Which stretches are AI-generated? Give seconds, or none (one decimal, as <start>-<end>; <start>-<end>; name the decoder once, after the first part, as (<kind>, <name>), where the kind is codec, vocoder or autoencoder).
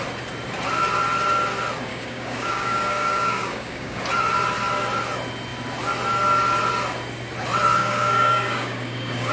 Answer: 1.9-4.0 (codec, DAC); 7.8-9.3